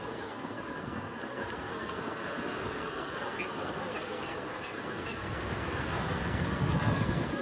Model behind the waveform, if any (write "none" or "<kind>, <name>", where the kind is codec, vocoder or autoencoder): codec, SNAC